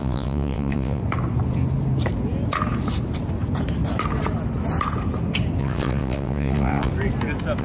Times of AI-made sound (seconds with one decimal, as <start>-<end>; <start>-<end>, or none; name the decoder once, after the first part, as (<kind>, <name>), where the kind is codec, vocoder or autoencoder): 0.0-1.0 (vocoder, WaveNeXt); 5.6-6.9

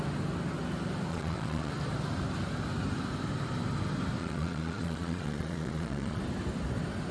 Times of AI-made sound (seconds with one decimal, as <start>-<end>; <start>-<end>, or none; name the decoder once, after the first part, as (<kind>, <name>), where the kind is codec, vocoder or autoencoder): 1.1-1.7 (vocoder, Vocos); 4.2-6.2

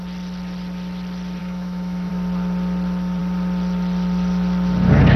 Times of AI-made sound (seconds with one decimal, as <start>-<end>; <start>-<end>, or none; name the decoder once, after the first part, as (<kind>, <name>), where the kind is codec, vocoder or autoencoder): 1.4-2.1 (autoencoder, DAC-VAE)

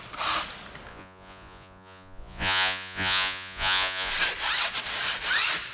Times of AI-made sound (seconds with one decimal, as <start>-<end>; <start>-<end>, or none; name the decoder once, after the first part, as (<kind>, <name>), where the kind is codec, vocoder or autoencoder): 0.9-4.1 (vocoder, Vocos)

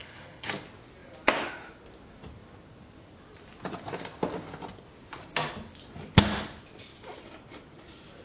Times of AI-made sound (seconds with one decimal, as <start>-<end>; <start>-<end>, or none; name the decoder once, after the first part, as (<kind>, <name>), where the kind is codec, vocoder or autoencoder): 0.0-0.5 (codec, HILCodec)

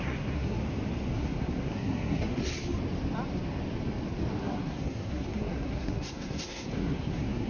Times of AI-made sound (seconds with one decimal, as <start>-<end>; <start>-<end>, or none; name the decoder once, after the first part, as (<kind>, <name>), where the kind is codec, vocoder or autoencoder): 0.0-0.6 (codec, SNAC); 1.1-2.4; 4.4-7.5

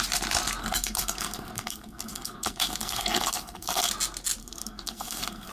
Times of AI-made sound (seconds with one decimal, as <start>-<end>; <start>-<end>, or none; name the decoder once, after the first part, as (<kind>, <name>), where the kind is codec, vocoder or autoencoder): 0.6-3.9 (codec, SNAC); 4.4-5.5

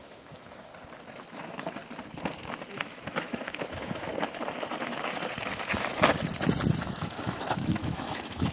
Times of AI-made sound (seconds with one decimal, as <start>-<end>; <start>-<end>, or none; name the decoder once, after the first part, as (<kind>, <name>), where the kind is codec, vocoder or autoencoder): 0.0-0.7 (autoencoder, DAC-VAE); 1.3-1.8; 2.7-4.1; 6.8-8.5